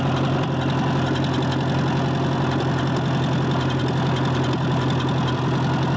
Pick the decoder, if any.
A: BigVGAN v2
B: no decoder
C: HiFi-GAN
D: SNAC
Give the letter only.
B